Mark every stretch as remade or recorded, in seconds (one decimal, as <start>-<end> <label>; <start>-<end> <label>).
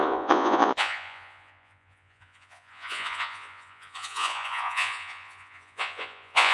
0.0-6.5 remade